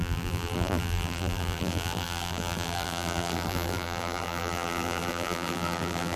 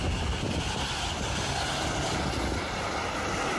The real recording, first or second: second